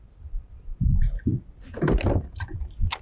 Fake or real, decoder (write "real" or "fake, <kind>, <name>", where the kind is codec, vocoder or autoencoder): real